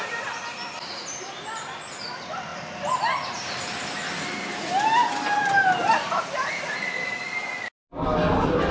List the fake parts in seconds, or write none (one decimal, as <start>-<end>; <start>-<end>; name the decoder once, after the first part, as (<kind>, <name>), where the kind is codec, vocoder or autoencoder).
none